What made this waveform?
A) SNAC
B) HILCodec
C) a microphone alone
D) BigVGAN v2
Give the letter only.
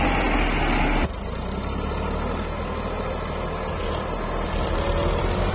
C